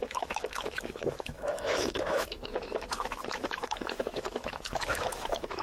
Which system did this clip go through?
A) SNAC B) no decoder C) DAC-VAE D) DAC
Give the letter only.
C